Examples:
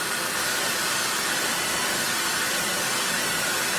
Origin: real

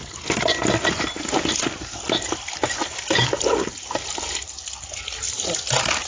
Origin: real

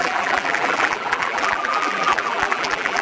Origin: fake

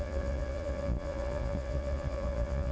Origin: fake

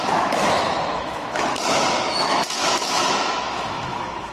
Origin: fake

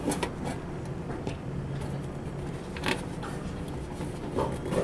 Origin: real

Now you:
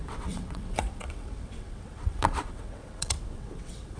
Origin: fake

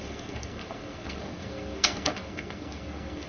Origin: fake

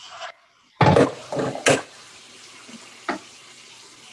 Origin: real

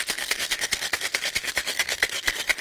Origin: fake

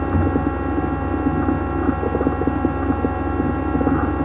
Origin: real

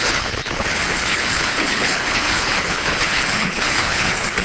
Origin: fake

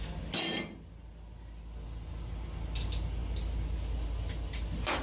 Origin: real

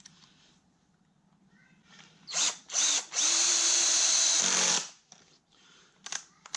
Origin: fake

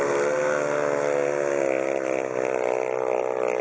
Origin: real